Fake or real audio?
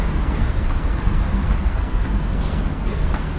fake